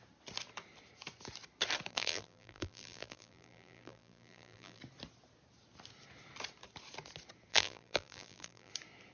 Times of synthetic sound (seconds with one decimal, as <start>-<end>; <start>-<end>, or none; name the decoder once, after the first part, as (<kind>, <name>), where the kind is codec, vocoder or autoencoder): 1.9-4.8 (vocoder, BigVGAN v2); 7.5-8.7